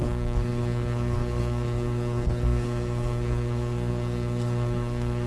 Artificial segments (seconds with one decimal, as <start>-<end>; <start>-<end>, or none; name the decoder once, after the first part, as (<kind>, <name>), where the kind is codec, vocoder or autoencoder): 0.0-5.3 (codec, SNAC)